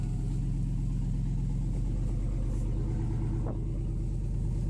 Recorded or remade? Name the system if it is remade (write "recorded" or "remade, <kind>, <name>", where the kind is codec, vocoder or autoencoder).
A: recorded